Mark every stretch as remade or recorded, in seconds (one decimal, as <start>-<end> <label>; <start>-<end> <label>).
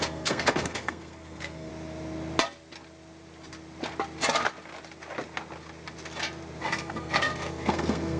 0.0-1.7 remade; 1.7-6.6 recorded; 6.6-8.2 remade